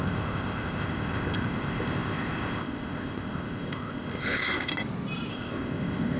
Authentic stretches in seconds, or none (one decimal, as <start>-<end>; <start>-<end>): 4.7-5.3